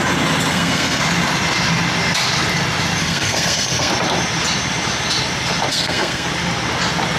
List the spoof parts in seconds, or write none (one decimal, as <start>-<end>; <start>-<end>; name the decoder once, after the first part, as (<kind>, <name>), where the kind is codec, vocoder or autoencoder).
0.5-1.0 (codec, SNAC); 3.0-3.9; 5.7-6.3